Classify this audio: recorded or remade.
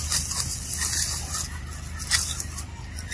recorded